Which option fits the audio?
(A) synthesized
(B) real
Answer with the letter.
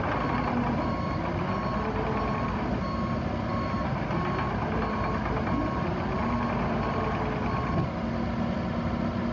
B